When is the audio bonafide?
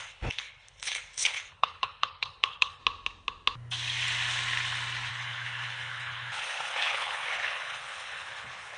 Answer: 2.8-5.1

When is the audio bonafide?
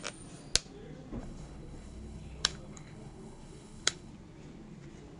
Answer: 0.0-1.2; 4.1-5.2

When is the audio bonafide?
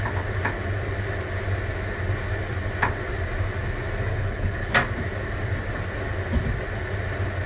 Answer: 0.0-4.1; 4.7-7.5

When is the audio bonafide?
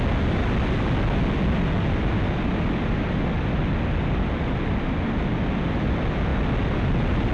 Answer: 0.0-7.3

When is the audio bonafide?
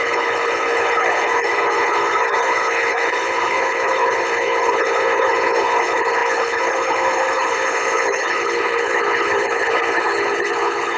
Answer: none